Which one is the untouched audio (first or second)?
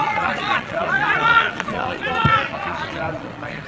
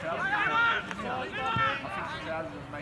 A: second